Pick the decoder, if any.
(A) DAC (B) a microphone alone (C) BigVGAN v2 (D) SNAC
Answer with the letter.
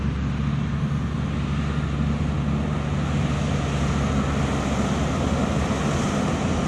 B